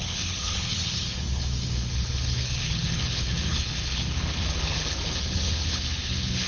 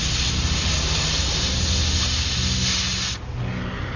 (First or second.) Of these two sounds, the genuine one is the second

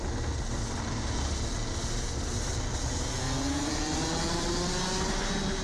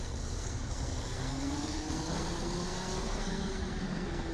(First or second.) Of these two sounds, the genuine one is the first